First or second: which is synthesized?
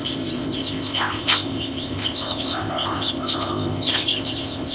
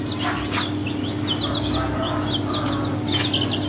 first